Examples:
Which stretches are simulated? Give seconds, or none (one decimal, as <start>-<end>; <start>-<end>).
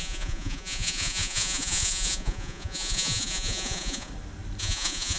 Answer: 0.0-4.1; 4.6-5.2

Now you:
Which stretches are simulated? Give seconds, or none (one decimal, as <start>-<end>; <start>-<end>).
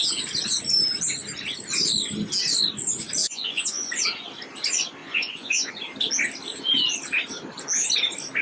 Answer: 3.2-3.9; 5.0-5.7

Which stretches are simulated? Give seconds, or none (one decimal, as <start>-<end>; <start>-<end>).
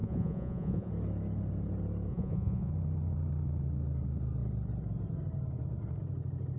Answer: 0.0-0.9; 2.1-2.7